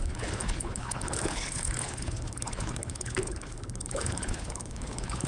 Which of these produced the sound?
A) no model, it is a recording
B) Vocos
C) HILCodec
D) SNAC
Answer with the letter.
C